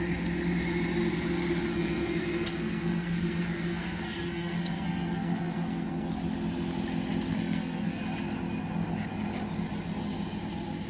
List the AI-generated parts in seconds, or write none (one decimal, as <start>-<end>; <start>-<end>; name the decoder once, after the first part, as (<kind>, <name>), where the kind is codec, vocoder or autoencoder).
1.7-6.1 (codec, SNAC); 7.3-8.0